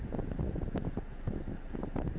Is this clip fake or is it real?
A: real